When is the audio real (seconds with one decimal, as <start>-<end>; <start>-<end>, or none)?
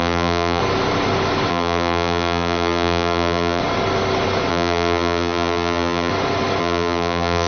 0.6-1.5; 3.6-4.5; 6.1-6.6